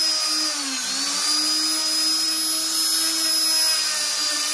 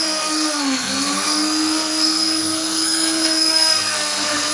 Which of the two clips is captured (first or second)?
first